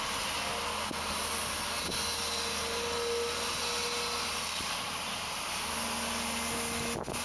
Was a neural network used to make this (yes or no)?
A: no